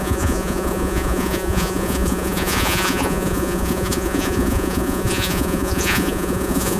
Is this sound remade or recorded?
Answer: remade